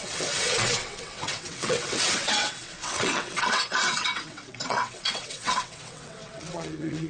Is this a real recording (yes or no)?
no